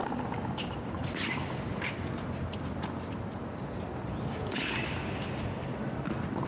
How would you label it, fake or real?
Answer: real